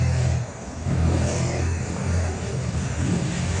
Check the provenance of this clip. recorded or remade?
remade